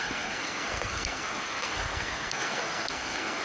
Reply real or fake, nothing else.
fake